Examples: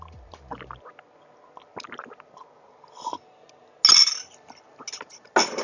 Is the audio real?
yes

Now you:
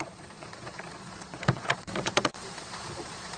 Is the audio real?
no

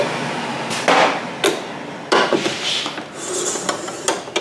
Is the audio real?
yes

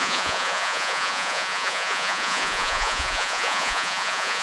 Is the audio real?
no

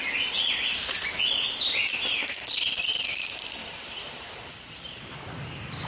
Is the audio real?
yes